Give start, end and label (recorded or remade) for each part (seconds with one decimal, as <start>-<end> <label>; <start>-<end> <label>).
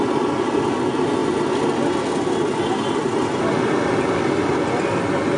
0.0-5.4 recorded